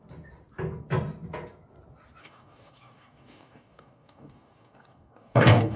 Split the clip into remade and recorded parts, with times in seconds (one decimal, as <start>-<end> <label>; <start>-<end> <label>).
0.0-2.2 recorded; 2.2-5.8 remade